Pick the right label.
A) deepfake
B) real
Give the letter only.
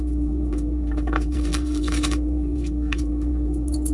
A